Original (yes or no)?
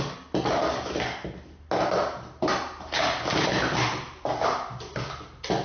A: yes